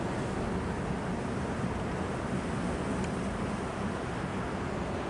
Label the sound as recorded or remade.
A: recorded